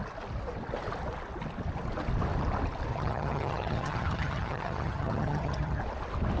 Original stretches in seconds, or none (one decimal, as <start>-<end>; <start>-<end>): 0.0-2.9; 5.8-6.4